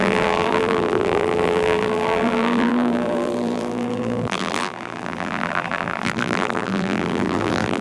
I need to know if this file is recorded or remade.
remade